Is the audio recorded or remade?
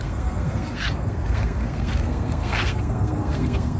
remade